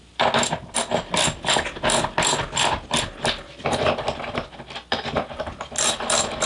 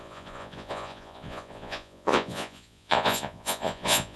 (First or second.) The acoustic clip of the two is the first